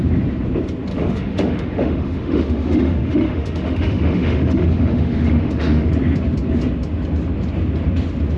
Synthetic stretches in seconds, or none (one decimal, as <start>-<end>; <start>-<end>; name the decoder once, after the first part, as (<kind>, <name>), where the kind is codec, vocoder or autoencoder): 0.9-5.9 (autoencoder, DAC-VAE)